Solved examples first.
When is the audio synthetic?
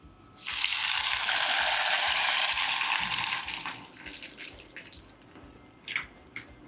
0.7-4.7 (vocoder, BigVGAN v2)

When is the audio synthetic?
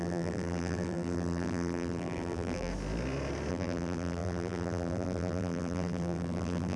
0.0-2.7 (vocoder, BigVGAN v2); 3.5-6.8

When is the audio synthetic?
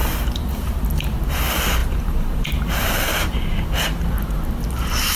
0.0-1.3 (vocoder, BigVGAN v2); 1.8-3.8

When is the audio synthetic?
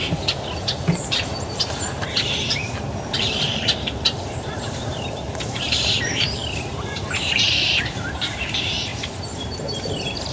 0.0-1.3 (vocoder, BigVGAN v2); 2.1-10.3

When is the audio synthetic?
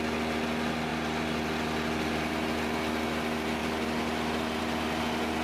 none